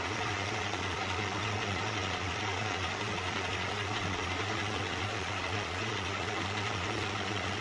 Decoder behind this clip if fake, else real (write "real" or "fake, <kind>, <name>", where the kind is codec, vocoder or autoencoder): fake, vocoder, Vocos